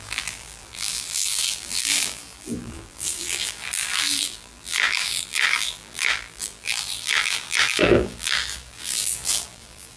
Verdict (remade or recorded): remade